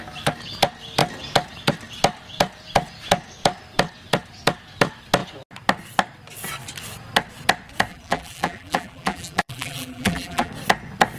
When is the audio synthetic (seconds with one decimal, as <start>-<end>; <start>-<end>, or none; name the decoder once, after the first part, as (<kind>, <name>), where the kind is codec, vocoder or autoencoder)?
7.9-10.5 (vocoder, BigVGAN v2)